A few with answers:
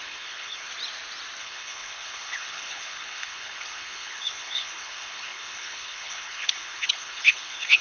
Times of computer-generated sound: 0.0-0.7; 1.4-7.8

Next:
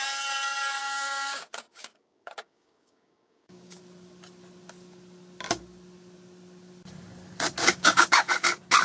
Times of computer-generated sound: 0.8-3.8; 7.6-8.2

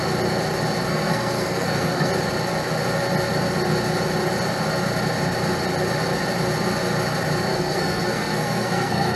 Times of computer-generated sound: 0.9-2.1; 7.5-9.2